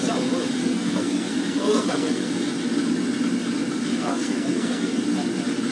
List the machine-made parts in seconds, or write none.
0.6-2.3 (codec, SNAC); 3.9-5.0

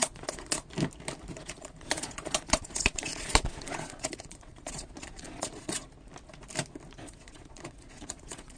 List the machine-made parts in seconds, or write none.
0.0-0.7 (vocoder, Vocos); 1.4-5.8; 6.9-8.6